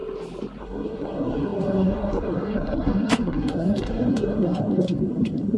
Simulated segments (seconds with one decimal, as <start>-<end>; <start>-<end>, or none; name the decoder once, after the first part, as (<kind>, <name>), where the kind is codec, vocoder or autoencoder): 0.6-5.6 (codec, SNAC)